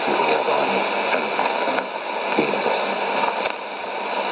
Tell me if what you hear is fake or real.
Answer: real